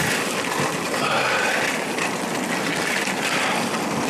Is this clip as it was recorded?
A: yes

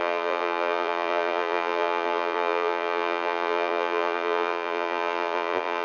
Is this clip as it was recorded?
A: no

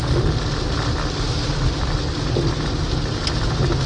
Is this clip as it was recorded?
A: yes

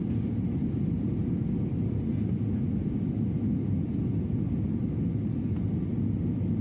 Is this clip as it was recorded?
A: yes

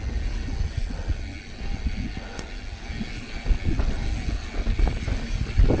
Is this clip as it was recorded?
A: yes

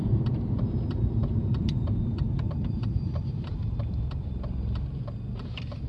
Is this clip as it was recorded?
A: no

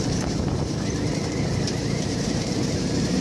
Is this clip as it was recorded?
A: no